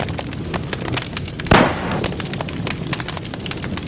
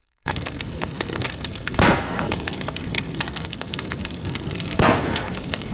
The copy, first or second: second